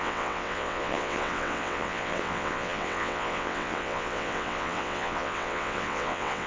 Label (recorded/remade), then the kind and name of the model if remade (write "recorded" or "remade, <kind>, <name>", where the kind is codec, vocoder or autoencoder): remade, vocoder, WaveNeXt